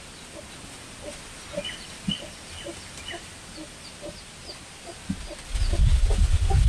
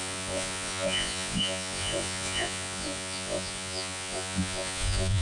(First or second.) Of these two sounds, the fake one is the second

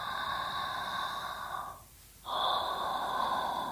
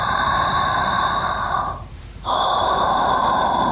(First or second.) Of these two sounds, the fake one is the second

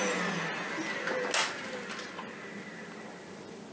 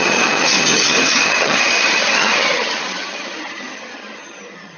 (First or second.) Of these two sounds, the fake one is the second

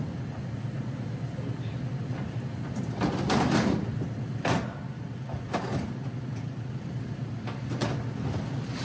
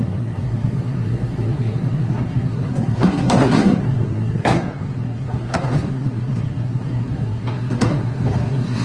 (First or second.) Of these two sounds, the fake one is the second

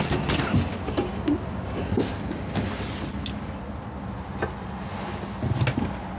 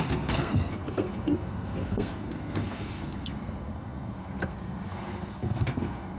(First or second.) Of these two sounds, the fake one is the second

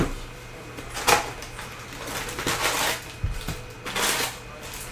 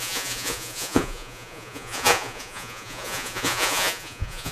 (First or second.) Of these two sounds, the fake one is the second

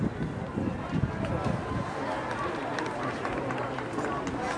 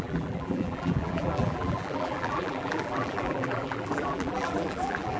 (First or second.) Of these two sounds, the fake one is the second